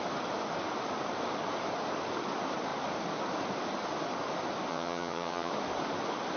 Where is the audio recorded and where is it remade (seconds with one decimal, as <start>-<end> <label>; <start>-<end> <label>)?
0.0-4.7 recorded; 4.7-5.5 remade; 5.5-6.4 recorded